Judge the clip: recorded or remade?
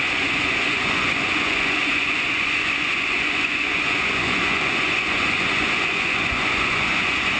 remade